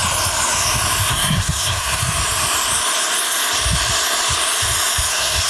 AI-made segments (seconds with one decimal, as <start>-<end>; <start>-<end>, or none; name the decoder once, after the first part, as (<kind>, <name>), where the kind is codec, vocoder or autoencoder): 1.1-2.0 (codec, SNAC); 5.1-5.5